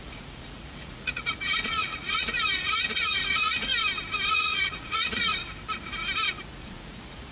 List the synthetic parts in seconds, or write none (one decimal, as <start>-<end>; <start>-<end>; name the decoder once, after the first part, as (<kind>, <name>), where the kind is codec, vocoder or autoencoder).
0.0-3.7 (vocoder, Vocos); 4.3-5.4; 6.3-7.3